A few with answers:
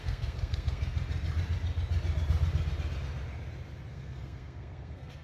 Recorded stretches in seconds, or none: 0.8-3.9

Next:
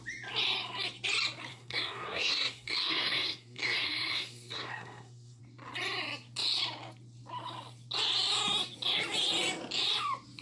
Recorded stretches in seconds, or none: 0.0-1.5; 5.4-10.4

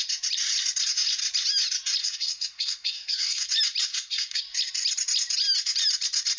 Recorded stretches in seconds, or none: 0.0-2.0; 3.5-3.9; 4.4-6.4